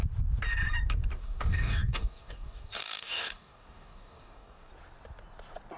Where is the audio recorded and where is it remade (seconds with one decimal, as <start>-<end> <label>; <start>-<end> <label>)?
0.0-1.2 recorded; 1.2-4.7 remade; 4.7-5.8 recorded